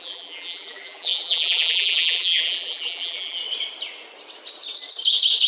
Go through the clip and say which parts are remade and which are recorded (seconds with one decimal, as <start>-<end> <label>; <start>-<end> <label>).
0.0-3.4 remade; 3.4-5.5 recorded